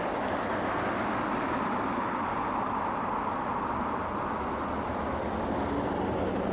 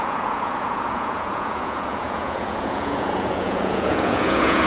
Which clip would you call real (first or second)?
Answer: first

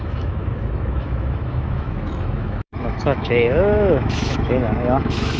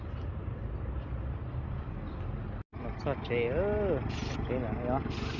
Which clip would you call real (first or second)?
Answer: second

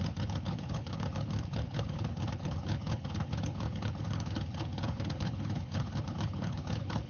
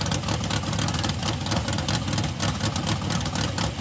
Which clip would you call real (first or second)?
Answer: second